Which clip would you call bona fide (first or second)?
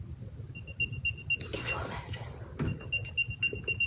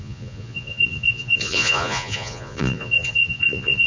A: first